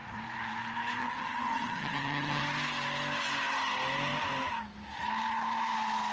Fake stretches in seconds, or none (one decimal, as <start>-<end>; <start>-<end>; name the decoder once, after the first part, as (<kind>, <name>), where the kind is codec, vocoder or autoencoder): 1.0-2.4 (vocoder, HiFi-GAN)